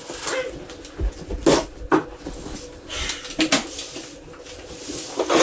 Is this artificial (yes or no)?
no